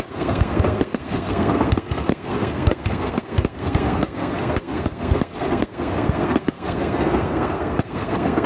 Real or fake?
fake